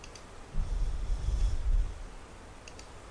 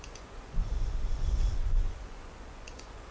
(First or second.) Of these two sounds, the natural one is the first